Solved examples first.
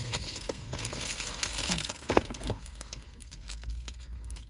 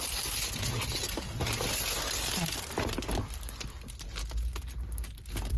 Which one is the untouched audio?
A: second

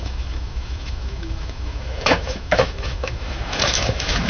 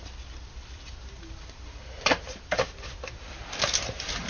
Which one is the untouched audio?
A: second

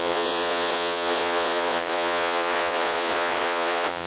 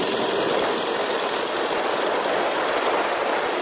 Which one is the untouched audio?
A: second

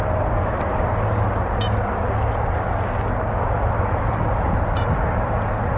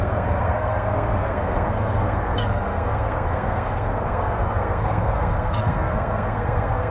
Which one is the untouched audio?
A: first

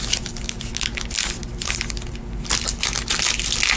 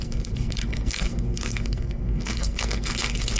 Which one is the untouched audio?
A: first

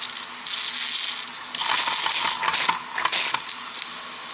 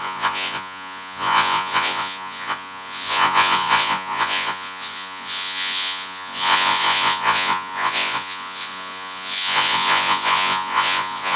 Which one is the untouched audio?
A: first